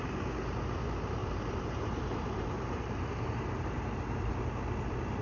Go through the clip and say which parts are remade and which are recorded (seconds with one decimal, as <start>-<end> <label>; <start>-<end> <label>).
0.0-1.2 recorded; 1.2-4.3 remade; 4.3-5.2 recorded